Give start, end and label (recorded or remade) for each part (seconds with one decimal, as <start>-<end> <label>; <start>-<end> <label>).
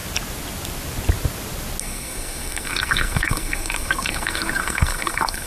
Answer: 0.0-1.8 recorded; 1.8-5.5 remade